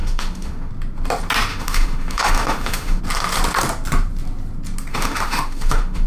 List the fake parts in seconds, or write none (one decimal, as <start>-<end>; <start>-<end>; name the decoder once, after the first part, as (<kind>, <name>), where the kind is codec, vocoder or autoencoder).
0.0-0.7 (autoencoder, DAC-VAE); 1.5-3.0; 4.9-6.1